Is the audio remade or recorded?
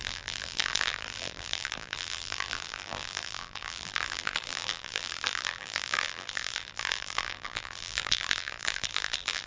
remade